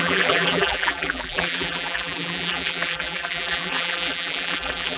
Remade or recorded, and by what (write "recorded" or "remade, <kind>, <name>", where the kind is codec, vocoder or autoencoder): remade, vocoder, BigVGAN v2